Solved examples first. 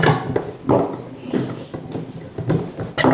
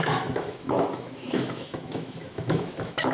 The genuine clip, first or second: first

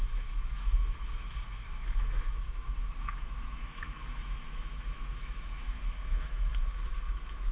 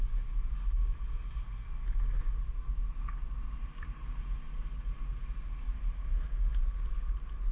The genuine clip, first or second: second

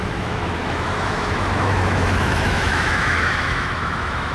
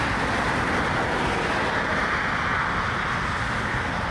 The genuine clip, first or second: second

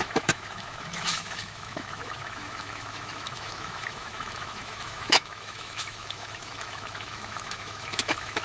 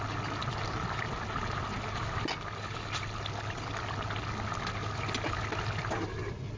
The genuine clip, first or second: second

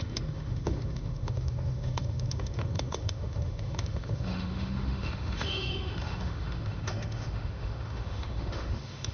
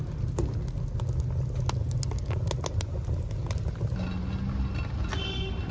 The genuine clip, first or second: second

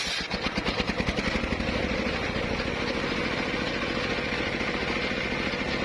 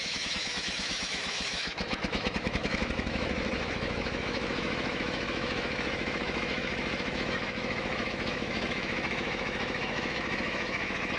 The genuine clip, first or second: first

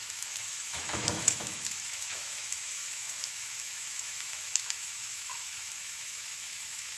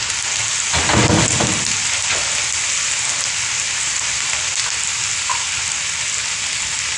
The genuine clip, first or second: second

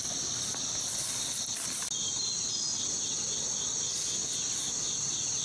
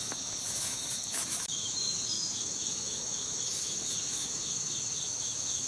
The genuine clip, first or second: first